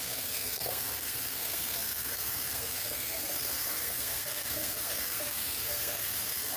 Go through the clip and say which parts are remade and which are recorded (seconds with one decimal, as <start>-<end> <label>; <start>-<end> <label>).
0.0-6.6 remade